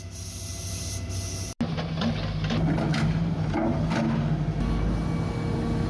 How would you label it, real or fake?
real